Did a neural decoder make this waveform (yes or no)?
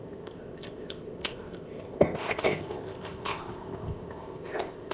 yes